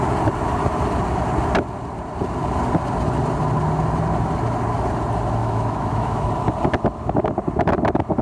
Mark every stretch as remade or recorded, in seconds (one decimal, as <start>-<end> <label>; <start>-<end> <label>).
0.0-5.4 recorded; 5.4-6.3 remade; 6.3-8.2 recorded